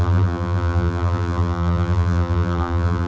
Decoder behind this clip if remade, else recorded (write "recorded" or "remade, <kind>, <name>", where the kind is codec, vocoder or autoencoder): remade, vocoder, BigVGAN v2